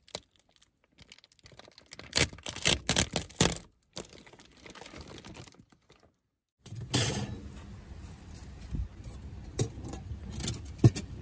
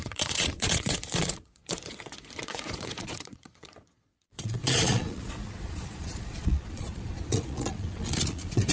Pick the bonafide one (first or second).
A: first